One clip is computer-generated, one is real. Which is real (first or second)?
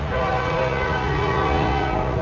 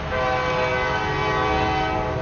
second